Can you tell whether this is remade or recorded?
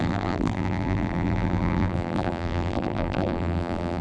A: remade